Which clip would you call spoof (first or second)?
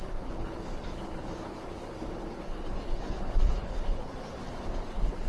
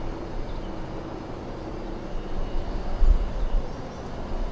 first